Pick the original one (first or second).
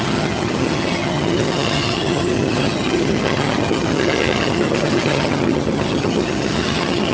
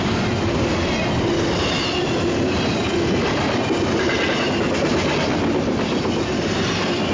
second